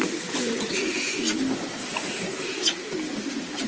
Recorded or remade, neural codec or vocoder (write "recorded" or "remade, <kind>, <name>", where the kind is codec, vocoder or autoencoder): recorded